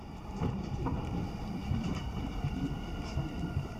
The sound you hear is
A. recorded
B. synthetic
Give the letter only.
B